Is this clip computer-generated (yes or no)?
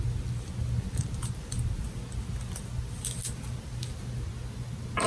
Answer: no